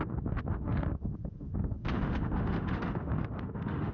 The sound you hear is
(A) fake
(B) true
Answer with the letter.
A